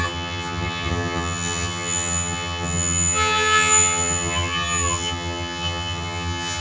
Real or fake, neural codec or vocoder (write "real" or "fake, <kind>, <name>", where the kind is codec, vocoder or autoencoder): fake, vocoder, HiFi-GAN